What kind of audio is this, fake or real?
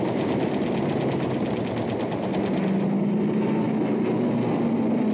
real